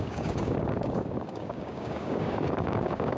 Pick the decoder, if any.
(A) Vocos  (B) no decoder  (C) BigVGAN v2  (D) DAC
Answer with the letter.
D